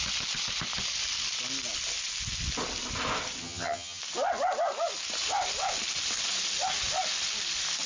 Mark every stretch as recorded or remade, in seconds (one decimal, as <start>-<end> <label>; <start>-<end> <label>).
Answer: 0.0-3.4 recorded; 3.4-4.0 remade; 4.0-7.9 recorded